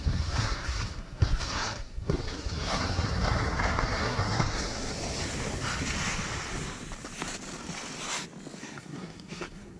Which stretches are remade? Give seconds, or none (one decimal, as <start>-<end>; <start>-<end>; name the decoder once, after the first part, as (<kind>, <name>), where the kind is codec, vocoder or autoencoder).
0.0-4.9 (codec, SNAC); 8.6-9.8